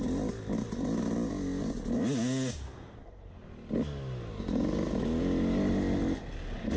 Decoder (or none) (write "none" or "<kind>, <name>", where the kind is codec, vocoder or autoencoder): none